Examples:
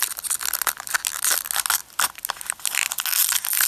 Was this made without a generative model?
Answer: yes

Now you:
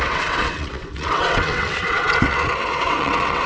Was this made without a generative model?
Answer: no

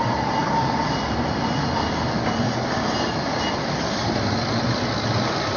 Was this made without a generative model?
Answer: yes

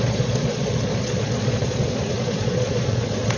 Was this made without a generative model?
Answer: no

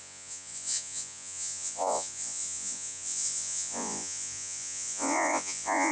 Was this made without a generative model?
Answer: no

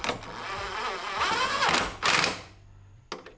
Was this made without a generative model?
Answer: yes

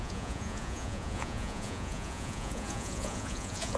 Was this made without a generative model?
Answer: no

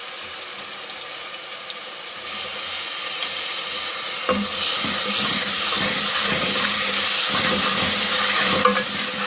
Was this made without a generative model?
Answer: yes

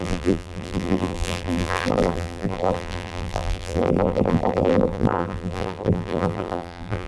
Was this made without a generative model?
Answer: no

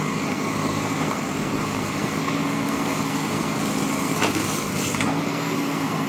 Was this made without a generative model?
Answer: no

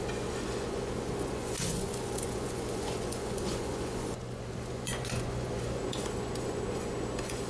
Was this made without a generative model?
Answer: no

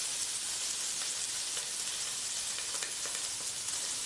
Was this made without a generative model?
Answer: yes